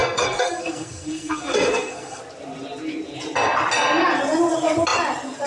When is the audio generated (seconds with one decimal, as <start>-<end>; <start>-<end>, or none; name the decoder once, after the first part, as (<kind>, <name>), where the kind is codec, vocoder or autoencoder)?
0.0-2.2 (codec, SNAC)